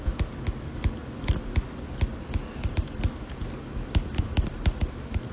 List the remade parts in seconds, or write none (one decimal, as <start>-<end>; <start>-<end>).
none